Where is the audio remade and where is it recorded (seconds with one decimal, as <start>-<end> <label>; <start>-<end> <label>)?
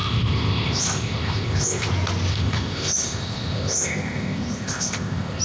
0.0-1.9 remade; 1.9-2.3 recorded; 2.3-5.4 remade